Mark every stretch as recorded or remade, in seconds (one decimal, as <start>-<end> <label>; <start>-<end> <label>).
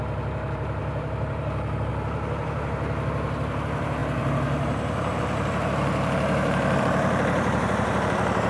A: 0.0-8.5 remade